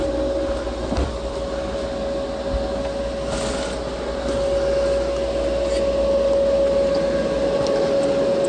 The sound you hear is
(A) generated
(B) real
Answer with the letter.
B